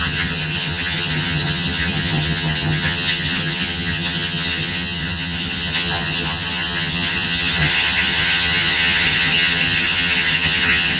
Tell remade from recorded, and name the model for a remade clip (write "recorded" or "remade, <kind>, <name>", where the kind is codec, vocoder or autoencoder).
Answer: remade, vocoder, HiFi-GAN